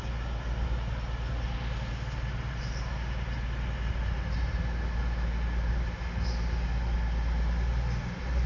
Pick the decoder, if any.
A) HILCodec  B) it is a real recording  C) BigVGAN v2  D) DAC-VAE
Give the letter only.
B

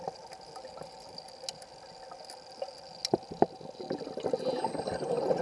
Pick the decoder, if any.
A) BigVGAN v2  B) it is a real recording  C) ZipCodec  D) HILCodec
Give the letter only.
B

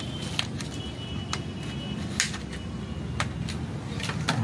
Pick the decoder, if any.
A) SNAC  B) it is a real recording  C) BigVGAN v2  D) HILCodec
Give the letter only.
B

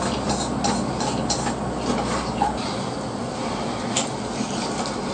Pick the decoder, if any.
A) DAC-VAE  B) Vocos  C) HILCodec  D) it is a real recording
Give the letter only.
D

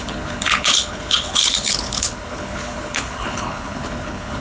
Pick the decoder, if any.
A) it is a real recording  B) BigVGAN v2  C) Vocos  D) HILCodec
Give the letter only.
D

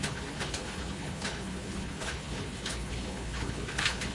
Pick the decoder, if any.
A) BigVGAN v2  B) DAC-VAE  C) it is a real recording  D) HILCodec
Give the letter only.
D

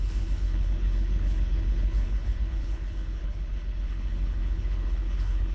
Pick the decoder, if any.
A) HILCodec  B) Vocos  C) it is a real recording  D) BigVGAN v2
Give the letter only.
A